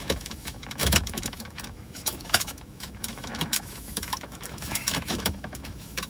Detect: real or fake fake